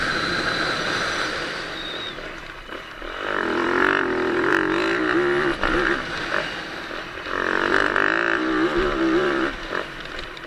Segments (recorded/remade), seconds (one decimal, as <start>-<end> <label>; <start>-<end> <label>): 0.0-4.5 remade; 4.5-7.0 recorded; 7.0-7.8 remade; 7.8-9.2 recorded; 9.2-10.5 remade